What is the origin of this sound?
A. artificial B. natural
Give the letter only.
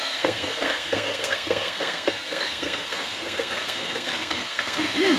A